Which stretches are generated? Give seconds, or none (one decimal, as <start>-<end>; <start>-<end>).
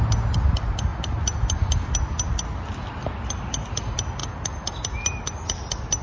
none